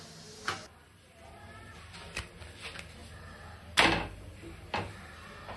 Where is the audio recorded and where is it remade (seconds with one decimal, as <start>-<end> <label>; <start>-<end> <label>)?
0.0-5.6 recorded